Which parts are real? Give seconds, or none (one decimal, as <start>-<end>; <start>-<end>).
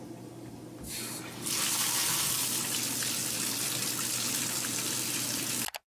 0.0-5.9